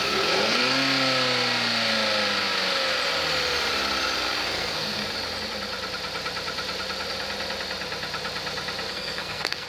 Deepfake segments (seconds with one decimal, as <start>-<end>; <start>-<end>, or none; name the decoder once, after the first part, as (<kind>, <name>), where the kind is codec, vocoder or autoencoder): 0.0-0.6 (codec, SNAC); 4.4-5.0; 8.9-9.7